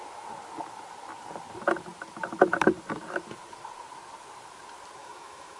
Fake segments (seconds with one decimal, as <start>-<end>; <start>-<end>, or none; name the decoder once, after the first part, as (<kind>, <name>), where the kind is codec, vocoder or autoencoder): 5.0-5.6 (autoencoder, DAC-VAE)

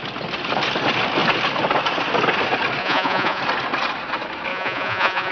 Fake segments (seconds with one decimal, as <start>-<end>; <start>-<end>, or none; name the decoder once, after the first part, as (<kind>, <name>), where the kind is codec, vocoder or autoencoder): 2.8-3.4 (vocoder, Vocos); 4.5-5.3

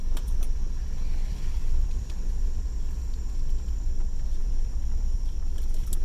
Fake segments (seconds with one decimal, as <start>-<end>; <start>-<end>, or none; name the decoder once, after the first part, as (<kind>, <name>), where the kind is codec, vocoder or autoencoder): 1.1-2.6 (vocoder, BigVGAN v2); 4.4-5.3